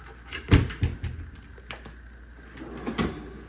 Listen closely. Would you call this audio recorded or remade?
recorded